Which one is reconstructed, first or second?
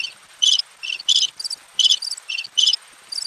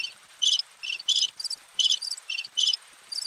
second